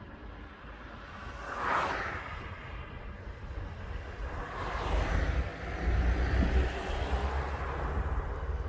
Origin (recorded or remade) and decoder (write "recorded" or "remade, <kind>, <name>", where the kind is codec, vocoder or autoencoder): recorded